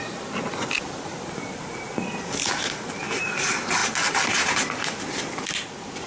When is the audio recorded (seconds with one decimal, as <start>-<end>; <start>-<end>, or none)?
0.0-6.1